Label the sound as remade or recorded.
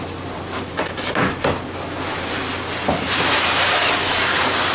recorded